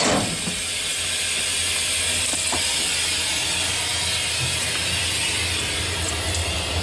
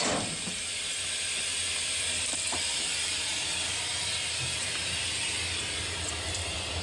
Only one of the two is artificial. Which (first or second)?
second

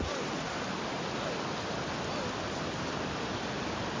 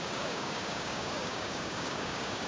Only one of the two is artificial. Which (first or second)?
second